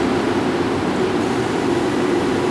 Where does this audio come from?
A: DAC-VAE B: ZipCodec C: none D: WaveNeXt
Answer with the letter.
C